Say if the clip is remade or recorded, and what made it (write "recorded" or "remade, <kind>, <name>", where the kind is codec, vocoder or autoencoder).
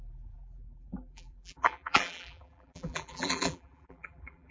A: remade, vocoder, BigVGAN v2